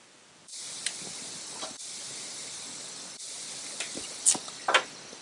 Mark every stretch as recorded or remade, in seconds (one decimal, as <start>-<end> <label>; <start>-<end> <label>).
0.0-5.2 recorded